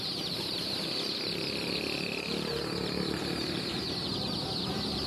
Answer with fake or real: fake